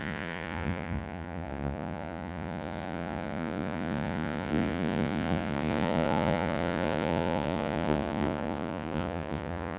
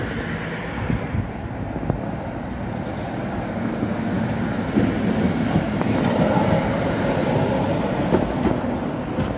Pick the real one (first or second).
second